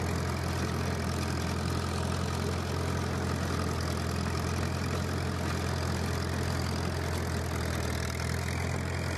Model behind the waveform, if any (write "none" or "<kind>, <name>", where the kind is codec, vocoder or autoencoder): none